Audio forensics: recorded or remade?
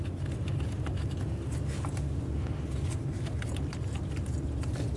recorded